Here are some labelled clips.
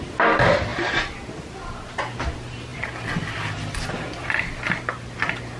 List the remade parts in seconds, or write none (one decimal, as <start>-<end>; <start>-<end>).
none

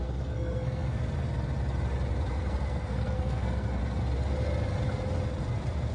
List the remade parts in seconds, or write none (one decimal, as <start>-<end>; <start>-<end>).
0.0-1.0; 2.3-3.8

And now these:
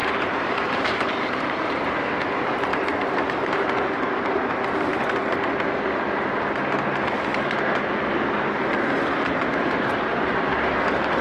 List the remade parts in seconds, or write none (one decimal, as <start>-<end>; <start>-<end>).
0.0-2.7; 4.2-4.9; 9.3-11.2